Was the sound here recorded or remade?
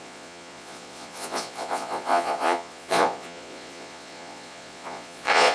remade